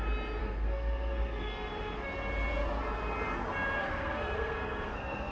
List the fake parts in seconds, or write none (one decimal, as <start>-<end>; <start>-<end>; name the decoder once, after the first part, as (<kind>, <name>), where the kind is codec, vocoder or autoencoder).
0.4-1.7 (codec, SNAC); 3.8-5.3